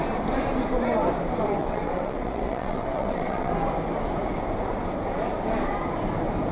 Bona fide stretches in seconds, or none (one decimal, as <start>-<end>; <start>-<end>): 0.0-1.6; 3.5-6.5